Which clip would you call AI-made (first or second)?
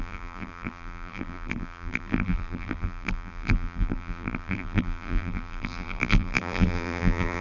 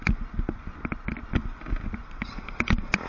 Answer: first